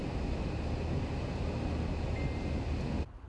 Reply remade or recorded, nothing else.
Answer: recorded